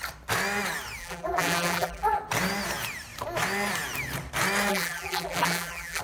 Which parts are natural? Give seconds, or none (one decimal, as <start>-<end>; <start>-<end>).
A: 0.0-1.0; 2.2-4.7